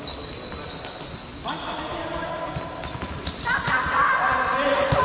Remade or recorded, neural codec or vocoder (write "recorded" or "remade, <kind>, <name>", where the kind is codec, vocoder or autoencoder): recorded